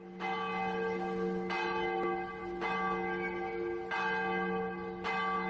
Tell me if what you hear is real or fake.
real